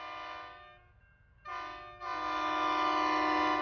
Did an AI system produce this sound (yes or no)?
no